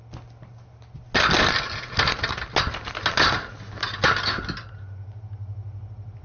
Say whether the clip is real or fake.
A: real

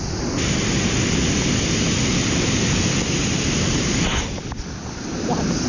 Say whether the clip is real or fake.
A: fake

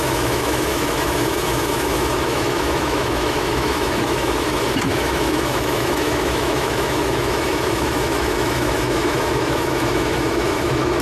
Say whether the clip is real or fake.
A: fake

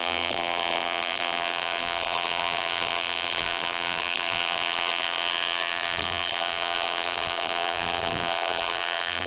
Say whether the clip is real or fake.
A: fake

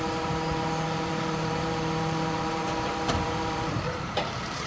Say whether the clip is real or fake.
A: fake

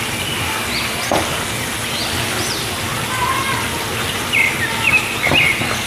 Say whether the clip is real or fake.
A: real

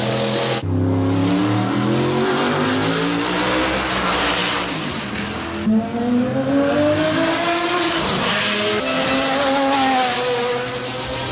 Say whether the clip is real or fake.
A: real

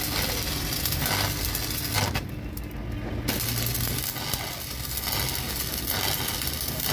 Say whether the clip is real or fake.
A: real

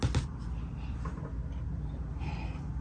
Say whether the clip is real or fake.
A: real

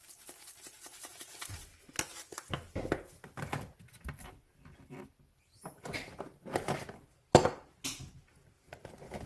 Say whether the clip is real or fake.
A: real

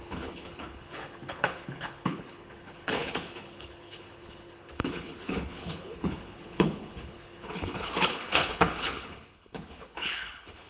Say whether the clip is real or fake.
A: fake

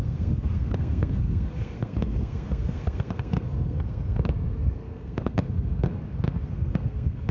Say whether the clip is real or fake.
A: fake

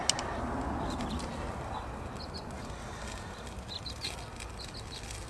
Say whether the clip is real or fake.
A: real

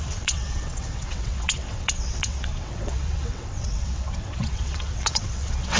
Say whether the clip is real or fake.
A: fake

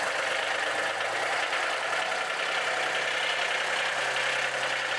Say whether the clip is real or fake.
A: real